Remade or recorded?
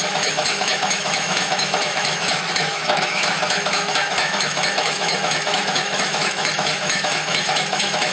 remade